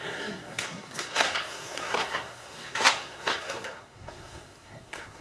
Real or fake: fake